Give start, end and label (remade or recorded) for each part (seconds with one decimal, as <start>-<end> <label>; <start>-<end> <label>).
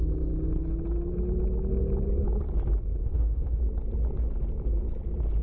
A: 0.0-3.0 recorded; 3.0-3.6 remade; 3.6-5.4 recorded